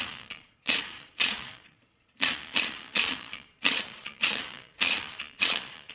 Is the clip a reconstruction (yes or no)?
yes